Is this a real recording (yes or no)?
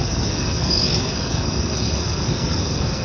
no